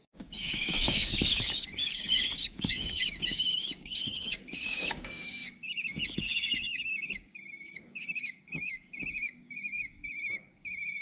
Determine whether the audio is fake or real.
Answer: fake